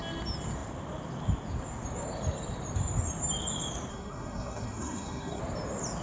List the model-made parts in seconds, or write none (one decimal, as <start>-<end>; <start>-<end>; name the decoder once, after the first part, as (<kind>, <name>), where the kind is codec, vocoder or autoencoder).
3.9-5.4 (codec, SNAC)

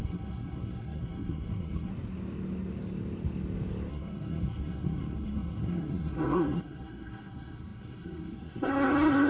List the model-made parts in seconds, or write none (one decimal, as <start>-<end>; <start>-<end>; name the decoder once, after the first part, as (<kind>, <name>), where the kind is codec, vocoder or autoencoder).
0.0-1.9 (codec, SNAC); 3.9-9.3

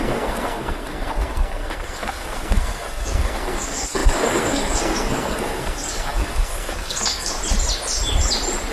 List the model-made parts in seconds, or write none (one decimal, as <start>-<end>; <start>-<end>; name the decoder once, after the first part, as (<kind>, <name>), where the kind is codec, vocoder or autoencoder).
0.0-7.4 (codec, SNAC)

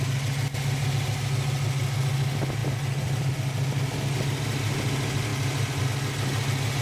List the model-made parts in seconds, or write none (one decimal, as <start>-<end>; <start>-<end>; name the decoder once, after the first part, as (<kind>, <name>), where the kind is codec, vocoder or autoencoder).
2.6-3.3 (vocoder, BigVGAN v2); 5.3-5.9

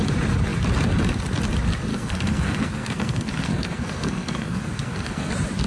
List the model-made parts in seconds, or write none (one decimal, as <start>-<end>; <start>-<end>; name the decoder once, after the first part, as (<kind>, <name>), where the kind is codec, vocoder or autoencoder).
1.9-5.3 (codec, SNAC)

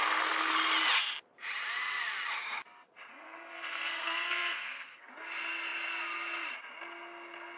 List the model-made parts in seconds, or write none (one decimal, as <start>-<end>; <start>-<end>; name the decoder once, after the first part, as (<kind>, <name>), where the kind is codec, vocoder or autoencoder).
3.1-5.1 (codec, SNAC)